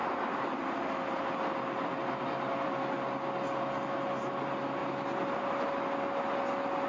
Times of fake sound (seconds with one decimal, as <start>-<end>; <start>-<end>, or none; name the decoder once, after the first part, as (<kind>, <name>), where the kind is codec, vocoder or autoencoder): none